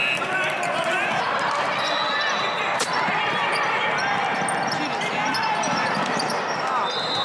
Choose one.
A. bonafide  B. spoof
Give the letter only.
A